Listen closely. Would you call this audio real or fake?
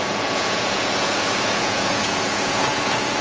fake